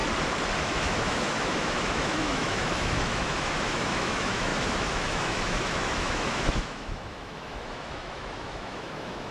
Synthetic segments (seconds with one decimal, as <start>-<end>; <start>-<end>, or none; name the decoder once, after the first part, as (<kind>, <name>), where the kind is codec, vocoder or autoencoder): 0.6-9.3 (autoencoder, DAC-VAE)